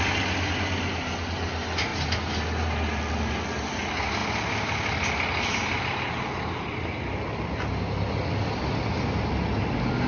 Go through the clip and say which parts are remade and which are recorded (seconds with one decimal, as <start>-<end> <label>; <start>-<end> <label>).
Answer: 0.0-10.1 recorded